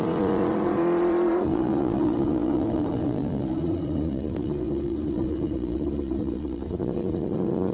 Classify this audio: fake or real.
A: fake